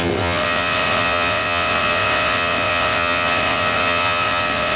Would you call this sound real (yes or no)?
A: no